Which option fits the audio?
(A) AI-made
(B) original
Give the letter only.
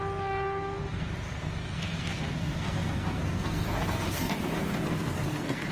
A